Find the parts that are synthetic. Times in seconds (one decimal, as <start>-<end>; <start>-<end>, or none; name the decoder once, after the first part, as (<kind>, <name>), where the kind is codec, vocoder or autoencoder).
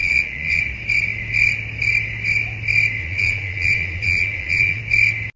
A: 0.0-0.6 (vocoder, Vocos); 3.0-4.8